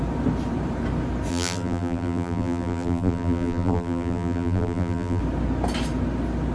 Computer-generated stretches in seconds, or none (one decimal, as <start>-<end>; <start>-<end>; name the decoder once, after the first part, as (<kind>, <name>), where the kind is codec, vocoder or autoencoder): 1.3-5.2 (vocoder, BigVGAN v2)